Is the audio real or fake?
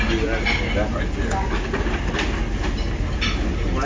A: real